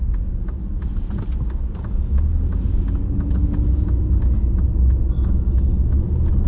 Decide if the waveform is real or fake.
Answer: real